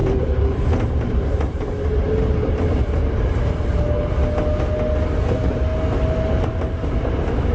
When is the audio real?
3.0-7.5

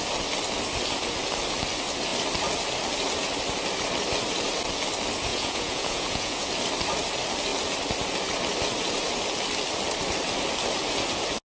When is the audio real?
0.0-5.3; 6.5-11.5

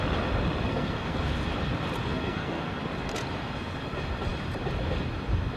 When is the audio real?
0.0-0.7; 1.3-2.1; 2.8-5.6

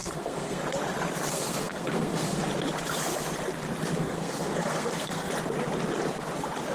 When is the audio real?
0.6-1.3; 2.4-4.0; 5.3-6.7

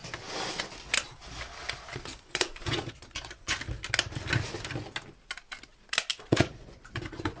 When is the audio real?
0.0-2.1; 3.6-6.3